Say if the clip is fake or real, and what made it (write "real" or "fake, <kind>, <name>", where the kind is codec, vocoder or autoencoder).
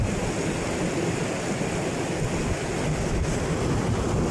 real